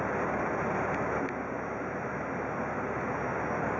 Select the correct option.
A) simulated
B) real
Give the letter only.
B